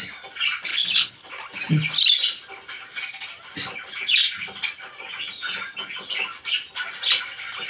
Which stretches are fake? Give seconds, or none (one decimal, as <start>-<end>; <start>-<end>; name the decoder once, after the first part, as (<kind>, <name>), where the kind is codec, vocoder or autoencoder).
0.7-1.3 (codec, HILCodec)

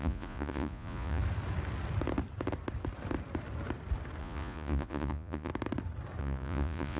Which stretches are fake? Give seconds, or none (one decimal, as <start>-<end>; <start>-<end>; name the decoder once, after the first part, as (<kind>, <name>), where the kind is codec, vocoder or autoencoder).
0.0-1.2 (vocoder, Vocos); 4.2-5.5; 6.2-7.0

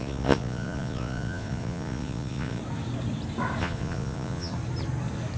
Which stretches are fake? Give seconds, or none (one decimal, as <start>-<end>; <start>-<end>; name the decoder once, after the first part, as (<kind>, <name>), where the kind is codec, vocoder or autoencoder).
0.0-2.6 (vocoder, Vocos); 3.6-4.5

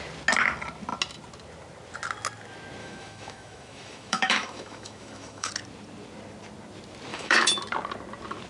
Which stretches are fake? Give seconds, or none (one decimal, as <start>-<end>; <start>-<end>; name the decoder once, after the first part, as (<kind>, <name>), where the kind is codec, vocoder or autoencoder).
2.8-5.5 (autoencoder, DAC-VAE); 7.1-7.6

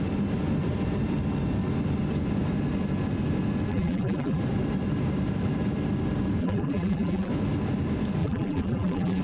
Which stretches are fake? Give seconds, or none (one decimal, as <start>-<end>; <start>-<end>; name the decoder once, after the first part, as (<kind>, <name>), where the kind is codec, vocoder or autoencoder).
3.7-4.4 (vocoder, BigVGAN v2); 6.4-7.3; 8.2-9.2

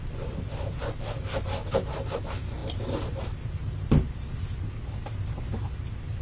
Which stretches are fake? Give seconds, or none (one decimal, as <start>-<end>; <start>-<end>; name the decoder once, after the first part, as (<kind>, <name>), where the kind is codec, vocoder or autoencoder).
none

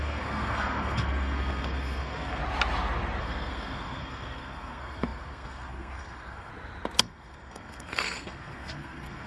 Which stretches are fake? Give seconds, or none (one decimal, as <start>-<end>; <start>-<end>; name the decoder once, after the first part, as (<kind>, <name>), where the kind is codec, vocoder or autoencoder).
0.0-2.4 (codec, SNAC); 3.2-6.5; 7.0-9.3

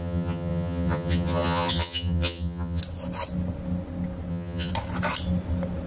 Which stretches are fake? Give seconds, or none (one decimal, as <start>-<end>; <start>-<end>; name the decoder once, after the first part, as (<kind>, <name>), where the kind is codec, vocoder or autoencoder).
0.0-2.8 (vocoder, HiFi-GAN); 4.3-4.7